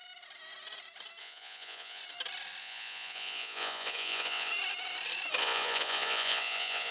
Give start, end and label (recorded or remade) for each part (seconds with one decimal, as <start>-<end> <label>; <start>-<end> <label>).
0.0-1.2 recorded; 1.2-2.0 remade; 2.0-2.6 recorded; 2.6-4.5 remade; 4.5-5.4 recorded; 5.4-6.9 remade